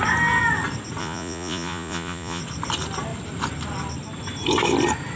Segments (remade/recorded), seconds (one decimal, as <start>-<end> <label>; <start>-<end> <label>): 0.0-1.0 recorded; 1.0-2.4 remade; 2.4-5.2 recorded